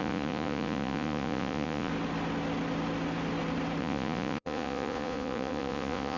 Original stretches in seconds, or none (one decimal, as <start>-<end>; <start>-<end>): 1.9-3.8